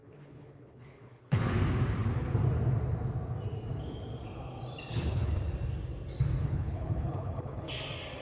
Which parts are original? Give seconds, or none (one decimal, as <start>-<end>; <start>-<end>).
1.5-4.9; 5.4-6.4; 7.7-8.2

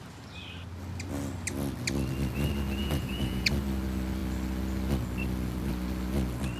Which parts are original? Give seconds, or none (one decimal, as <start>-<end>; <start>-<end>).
0.0-2.8; 3.5-6.6